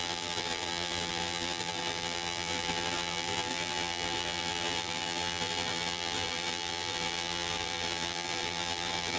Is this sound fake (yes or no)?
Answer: yes